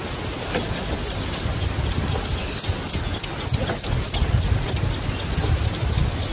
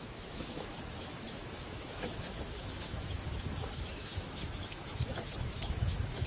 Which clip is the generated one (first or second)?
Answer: second